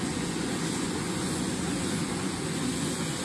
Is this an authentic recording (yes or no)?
no